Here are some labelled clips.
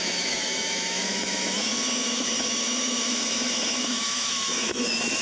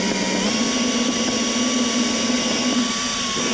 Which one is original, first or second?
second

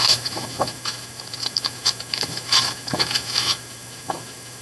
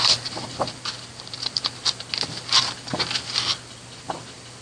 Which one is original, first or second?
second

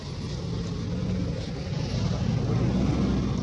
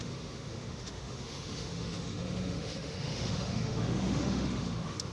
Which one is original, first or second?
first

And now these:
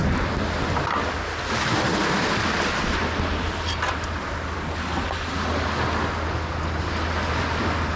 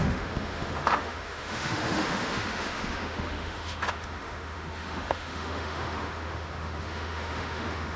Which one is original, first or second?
first